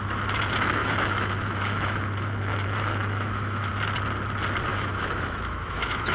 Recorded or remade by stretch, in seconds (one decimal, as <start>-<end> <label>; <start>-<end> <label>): 0.0-0.8 recorded; 0.8-3.7 remade; 3.7-4.7 recorded; 4.7-6.1 remade